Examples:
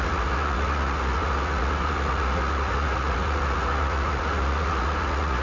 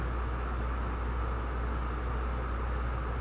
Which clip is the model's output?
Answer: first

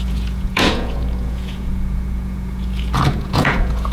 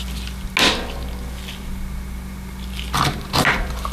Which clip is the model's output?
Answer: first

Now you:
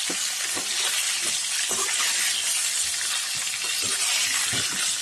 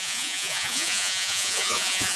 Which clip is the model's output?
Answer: second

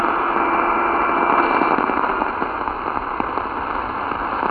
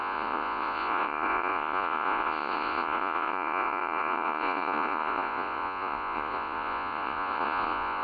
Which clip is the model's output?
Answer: second